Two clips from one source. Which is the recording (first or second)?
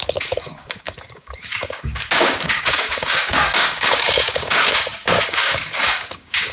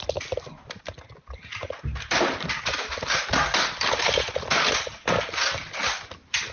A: second